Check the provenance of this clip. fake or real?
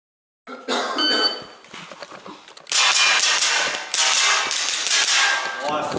real